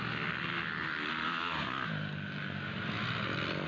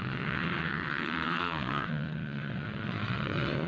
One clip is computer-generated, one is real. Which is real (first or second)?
first